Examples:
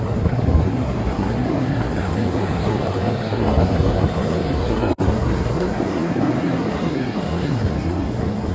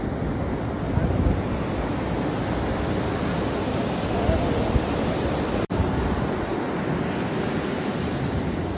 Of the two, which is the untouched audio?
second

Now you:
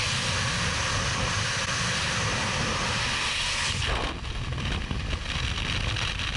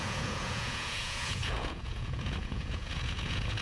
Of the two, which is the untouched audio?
first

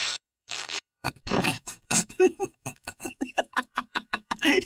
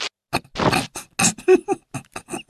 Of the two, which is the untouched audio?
second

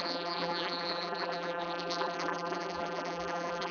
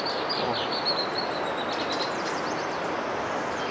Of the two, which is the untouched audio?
second